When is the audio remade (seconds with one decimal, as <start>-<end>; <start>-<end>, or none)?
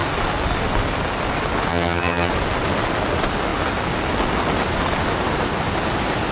1.7-2.3